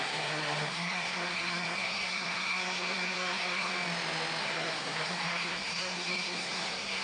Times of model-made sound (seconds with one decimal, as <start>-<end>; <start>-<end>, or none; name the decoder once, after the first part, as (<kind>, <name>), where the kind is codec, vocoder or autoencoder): 0.0-3.7 (codec, SNAC); 4.4-7.0